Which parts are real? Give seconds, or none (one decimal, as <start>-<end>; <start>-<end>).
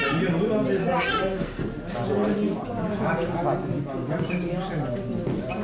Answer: 0.0-0.8; 1.6-5.6